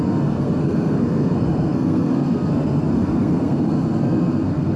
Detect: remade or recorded remade